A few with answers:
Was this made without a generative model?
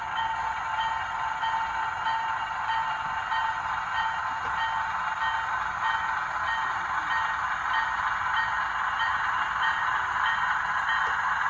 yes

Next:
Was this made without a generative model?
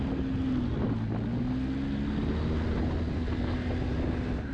yes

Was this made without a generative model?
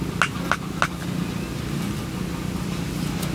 yes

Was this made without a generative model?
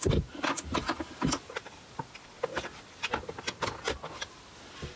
yes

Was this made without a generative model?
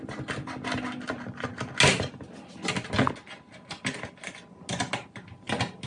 yes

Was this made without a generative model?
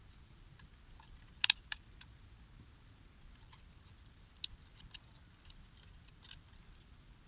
yes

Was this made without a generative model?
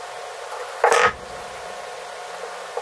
yes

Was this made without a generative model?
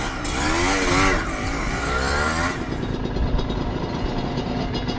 yes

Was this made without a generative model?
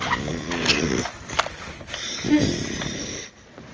yes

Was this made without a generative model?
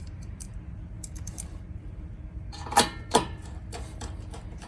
no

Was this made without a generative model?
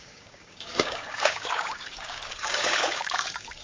no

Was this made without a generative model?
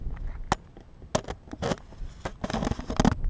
yes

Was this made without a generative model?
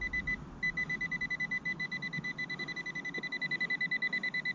yes